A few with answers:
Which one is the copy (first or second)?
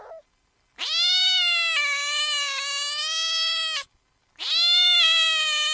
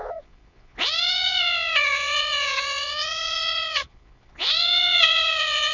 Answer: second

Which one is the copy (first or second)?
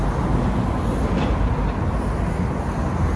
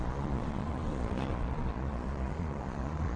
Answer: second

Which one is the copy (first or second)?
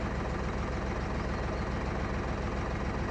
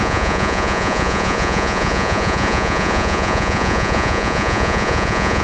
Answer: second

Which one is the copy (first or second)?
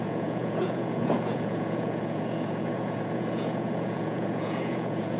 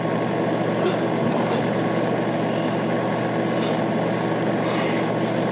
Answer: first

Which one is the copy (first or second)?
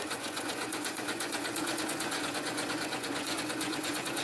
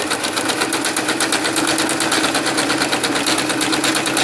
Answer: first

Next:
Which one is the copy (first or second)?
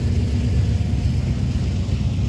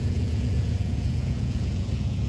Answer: second